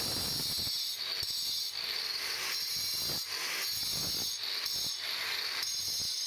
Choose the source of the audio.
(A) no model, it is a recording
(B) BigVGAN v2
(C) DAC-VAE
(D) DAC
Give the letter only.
A